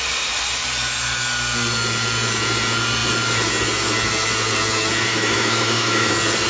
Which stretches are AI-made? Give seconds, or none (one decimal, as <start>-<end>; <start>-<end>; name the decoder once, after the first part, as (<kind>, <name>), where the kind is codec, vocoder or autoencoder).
5.1-6.1 (autoencoder, DAC-VAE)